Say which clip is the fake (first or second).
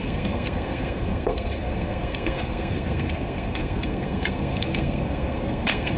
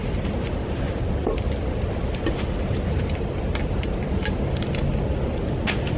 first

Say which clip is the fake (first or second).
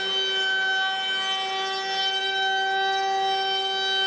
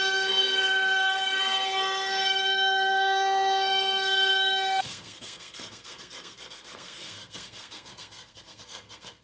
second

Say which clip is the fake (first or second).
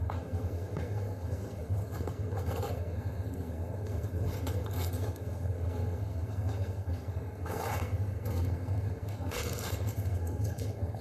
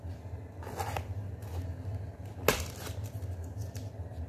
first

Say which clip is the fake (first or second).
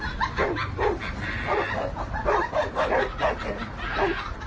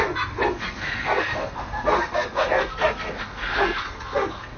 second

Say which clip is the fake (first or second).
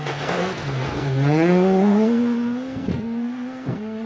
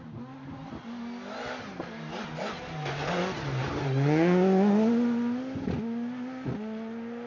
first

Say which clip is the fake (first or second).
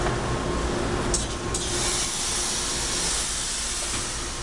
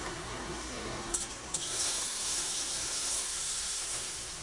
second